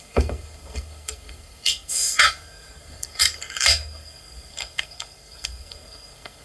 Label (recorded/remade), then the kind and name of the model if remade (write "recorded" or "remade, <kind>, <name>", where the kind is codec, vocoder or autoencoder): remade, codec, SNAC